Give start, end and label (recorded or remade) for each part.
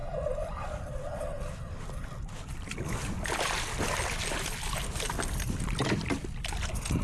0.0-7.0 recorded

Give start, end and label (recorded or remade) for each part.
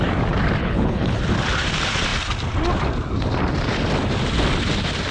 0.0-0.6 recorded; 0.6-1.2 remade; 1.2-5.1 recorded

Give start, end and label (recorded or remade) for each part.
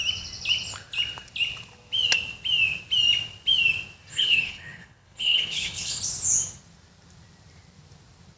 0.0-4.1 recorded; 4.1-6.0 remade; 6.0-8.4 recorded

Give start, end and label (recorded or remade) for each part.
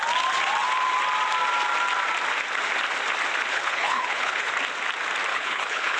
0.0-3.5 recorded; 3.5-4.5 remade; 4.5-5.3 recorded; 5.3-6.0 remade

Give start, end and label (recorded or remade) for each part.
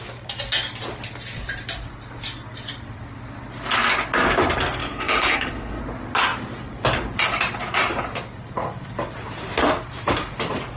0.0-4.8 recorded; 4.8-5.8 remade; 5.8-10.8 recorded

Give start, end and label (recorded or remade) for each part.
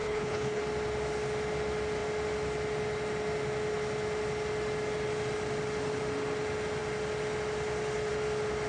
0.0-0.6 remade; 0.6-8.7 recorded